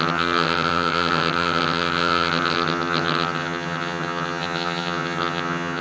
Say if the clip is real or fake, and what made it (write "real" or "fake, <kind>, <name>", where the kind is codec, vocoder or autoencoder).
fake, vocoder, HiFi-GAN